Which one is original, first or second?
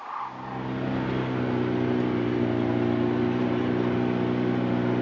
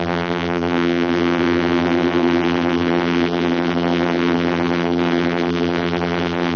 first